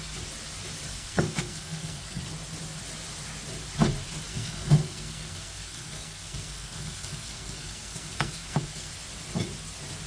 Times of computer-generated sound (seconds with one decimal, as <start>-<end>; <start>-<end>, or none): 0.9-2.2; 4.3-8.9